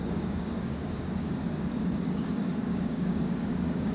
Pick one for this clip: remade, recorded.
remade